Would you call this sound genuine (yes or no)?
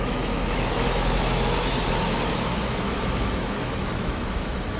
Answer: no